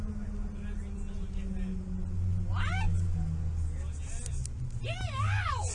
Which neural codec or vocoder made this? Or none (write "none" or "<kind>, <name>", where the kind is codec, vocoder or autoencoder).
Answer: none